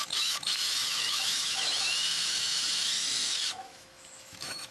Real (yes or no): no